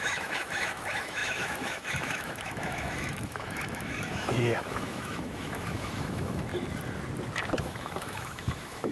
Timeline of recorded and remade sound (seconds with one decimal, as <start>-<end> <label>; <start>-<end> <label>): 0.0-6.5 remade; 6.5-7.6 recorded; 7.6-8.9 remade